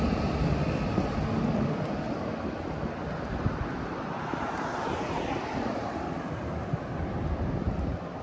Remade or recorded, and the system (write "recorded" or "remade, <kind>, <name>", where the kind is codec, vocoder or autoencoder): recorded